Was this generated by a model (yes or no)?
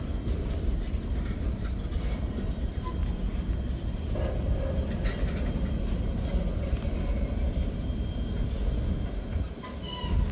no